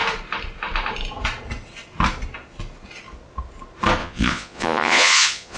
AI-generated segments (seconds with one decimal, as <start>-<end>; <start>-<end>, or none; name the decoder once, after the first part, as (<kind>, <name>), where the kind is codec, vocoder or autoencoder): 4.0-5.6 (vocoder, Vocos)